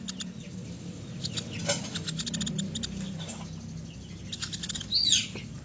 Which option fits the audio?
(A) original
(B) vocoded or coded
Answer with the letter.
A